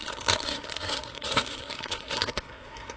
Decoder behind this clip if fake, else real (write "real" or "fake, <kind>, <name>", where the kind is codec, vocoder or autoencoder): fake, codec, SNAC